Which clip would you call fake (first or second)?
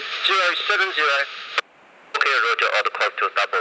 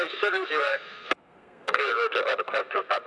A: second